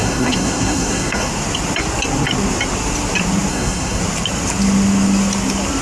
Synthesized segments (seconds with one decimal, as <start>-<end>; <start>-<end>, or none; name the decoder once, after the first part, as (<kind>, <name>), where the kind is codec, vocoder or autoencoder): 0.0-1.3 (codec, SNAC); 3.5-4.0